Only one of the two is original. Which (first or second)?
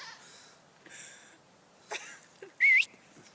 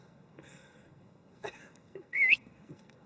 first